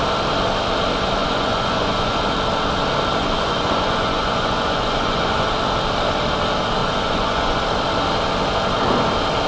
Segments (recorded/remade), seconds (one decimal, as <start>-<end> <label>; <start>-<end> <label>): 0.0-1.2 recorded; 1.2-2.3 remade; 2.3-3.2 recorded; 3.2-5.5 remade; 5.5-6.8 recorded; 6.8-7.6 remade; 7.6-9.5 recorded